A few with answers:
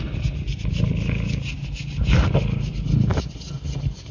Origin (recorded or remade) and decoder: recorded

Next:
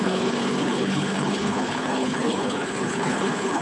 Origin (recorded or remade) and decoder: remade, codec, HILCodec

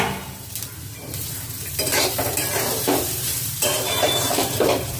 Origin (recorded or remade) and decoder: remade, vocoder, BigVGAN v2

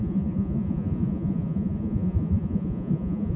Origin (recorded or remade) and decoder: remade, vocoder, Vocos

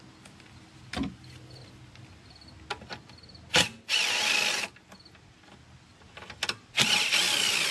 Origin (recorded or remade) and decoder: recorded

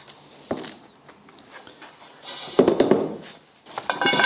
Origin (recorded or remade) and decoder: recorded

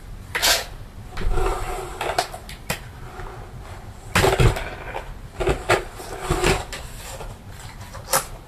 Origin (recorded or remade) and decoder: recorded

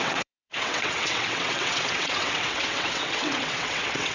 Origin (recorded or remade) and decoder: remade, vocoder, WaveNeXt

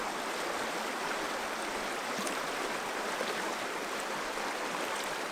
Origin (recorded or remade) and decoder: recorded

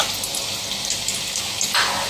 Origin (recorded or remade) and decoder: recorded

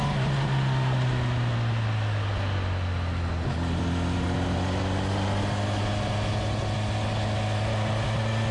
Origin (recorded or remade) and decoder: recorded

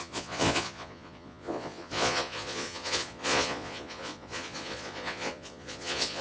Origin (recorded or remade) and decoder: remade, vocoder, Vocos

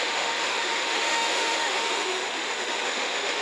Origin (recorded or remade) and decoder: remade, autoencoder, DAC-VAE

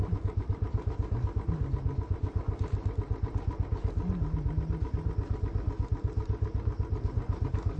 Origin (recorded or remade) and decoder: recorded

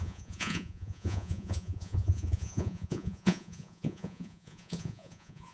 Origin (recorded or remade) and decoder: remade, vocoder, Vocos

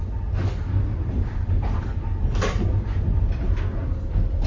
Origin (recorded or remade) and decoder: recorded